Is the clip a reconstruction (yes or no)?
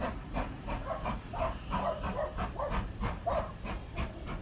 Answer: no